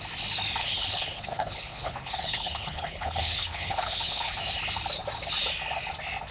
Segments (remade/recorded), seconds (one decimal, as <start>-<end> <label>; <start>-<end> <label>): 0.0-0.6 recorded; 0.6-4.4 remade; 4.4-6.3 recorded